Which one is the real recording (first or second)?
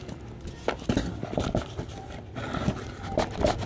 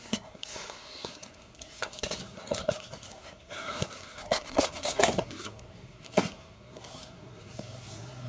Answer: first